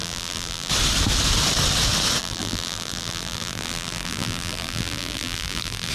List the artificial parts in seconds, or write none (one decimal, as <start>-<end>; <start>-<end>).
0.0-0.7; 2.2-5.9